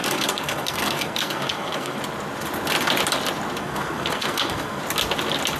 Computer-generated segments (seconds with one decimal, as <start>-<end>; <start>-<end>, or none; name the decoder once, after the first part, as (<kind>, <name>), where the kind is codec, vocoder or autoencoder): 0.0-2.0 (codec, SNAC); 3.6-4.8